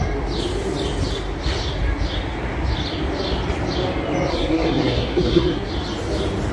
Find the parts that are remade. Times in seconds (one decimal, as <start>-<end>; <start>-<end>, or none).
4.3-5.7